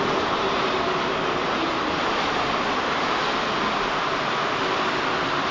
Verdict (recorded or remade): recorded